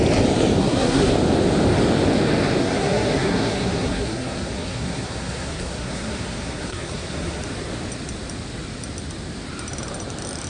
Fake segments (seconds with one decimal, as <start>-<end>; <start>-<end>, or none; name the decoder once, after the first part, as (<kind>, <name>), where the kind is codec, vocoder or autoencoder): 0.6-1.1 (codec, SNAC); 2.6-7.4